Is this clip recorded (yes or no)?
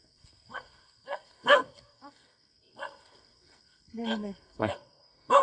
no